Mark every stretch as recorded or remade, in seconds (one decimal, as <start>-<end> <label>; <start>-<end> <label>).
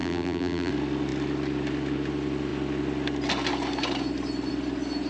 0.0-0.7 remade; 0.7-5.1 recorded